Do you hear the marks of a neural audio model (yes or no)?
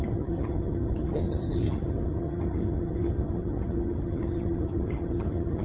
yes